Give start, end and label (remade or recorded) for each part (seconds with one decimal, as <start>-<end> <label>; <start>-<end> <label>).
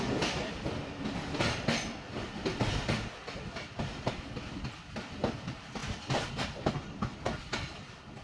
0.0-8.2 remade